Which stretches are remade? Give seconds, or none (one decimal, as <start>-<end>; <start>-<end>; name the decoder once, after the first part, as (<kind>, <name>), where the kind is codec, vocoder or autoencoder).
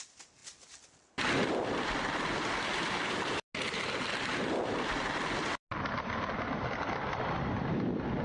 none